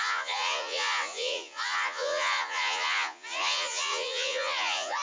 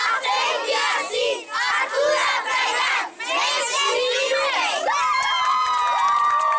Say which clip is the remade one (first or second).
first